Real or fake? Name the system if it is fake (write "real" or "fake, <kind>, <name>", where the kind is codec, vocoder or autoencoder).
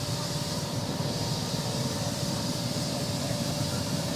fake, vocoder, BigVGAN v2